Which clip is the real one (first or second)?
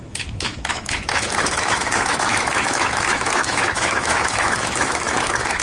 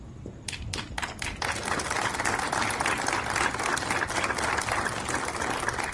second